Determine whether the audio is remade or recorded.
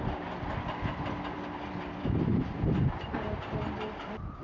recorded